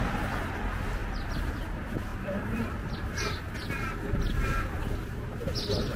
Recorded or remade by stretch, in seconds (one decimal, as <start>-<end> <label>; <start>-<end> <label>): 0.0-1.0 recorded; 1.0-1.7 remade; 1.7-2.1 recorded; 2.1-3.4 remade; 3.4-6.0 recorded